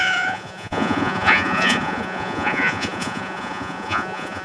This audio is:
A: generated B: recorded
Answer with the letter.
A